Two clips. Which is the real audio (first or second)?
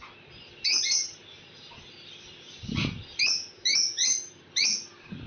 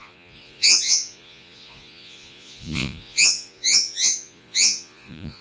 first